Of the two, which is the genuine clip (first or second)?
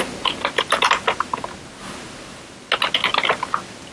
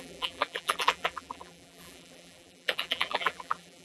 first